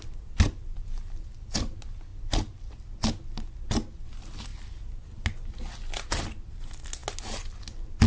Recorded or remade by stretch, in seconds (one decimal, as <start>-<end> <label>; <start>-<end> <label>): 0.0-8.1 recorded